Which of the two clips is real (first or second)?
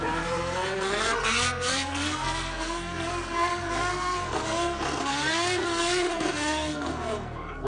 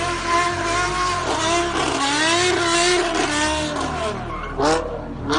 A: second